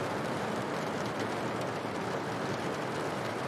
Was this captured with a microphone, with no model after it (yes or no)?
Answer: yes